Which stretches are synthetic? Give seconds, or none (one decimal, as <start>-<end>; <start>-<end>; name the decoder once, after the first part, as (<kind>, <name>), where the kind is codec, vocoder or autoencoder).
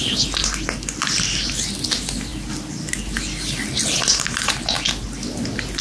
none